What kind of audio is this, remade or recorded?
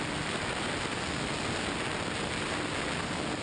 recorded